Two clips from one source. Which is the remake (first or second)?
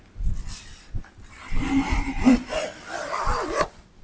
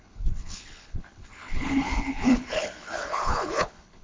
second